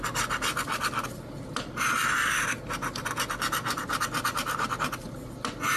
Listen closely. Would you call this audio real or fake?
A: real